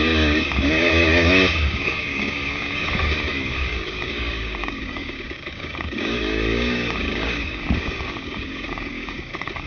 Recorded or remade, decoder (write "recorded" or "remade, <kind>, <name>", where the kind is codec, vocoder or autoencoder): remade, codec, DAC